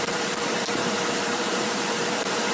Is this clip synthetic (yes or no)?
yes